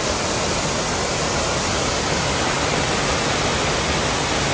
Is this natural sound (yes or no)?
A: yes